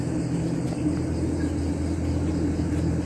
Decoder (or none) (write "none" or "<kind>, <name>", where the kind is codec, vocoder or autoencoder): none